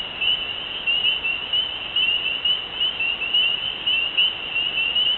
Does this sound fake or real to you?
real